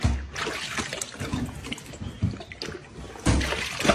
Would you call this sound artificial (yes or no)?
no